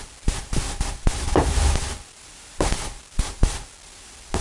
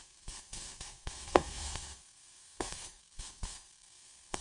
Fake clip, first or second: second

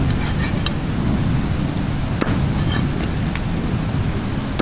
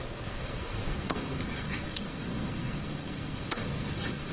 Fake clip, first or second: second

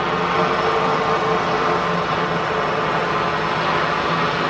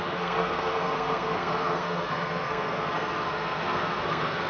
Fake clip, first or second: second